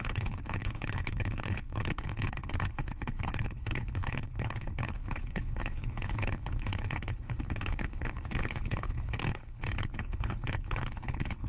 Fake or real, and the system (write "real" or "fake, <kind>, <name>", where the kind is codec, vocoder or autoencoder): fake, codec, HILCodec